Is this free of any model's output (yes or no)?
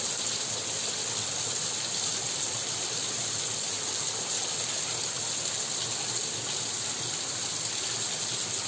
yes